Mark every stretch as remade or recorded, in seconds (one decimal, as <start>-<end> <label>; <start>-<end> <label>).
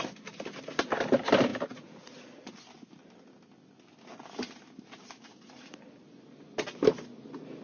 0.0-7.6 recorded